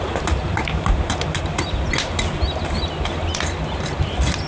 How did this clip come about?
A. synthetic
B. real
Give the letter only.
B